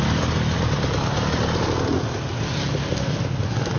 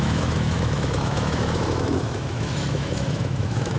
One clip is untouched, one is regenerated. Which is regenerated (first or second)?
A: second